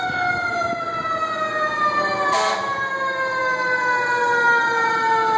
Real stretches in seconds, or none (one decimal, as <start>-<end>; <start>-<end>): 0.0-5.4